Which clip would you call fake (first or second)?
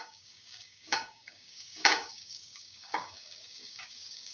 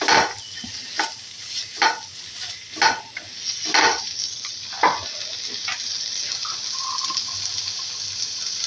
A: first